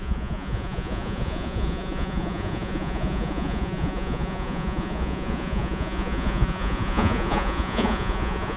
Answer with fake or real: fake